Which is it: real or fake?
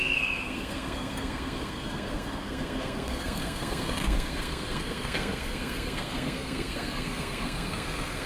fake